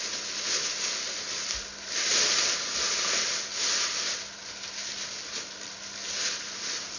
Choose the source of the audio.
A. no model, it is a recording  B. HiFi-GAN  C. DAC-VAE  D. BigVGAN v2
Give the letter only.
A